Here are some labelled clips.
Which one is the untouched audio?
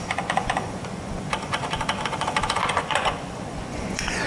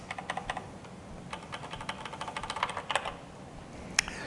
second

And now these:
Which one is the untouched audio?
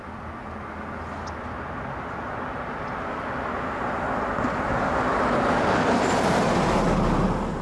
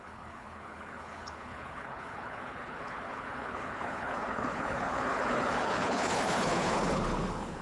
first